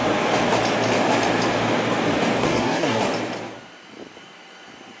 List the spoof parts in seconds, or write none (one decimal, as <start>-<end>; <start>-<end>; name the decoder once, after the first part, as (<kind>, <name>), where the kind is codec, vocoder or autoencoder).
2.4-3.0 (codec, SNAC)